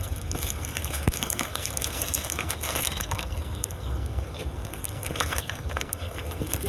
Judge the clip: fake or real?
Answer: fake